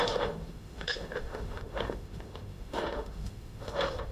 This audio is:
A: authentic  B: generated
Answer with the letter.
B